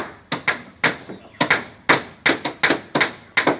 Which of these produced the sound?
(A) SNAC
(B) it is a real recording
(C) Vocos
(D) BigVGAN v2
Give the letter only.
B